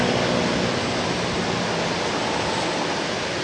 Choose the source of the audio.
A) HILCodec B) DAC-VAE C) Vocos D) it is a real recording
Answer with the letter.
D